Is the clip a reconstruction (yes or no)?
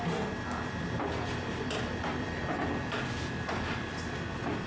yes